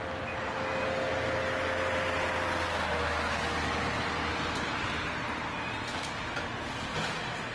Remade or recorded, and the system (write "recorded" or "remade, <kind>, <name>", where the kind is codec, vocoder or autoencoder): recorded